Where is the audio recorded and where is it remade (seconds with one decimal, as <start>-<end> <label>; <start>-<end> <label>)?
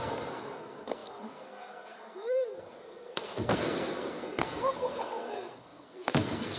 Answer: 0.0-6.6 remade